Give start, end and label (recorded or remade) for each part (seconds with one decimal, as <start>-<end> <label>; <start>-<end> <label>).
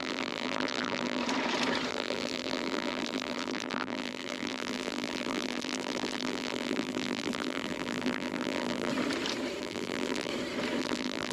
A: 0.0-1.2 remade; 1.2-1.9 recorded; 1.9-8.9 remade; 8.9-9.6 recorded; 9.6-10.3 remade; 10.3-10.8 recorded; 10.8-11.3 remade